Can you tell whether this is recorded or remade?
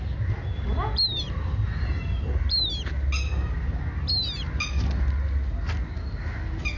recorded